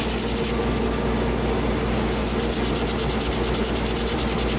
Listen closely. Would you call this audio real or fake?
real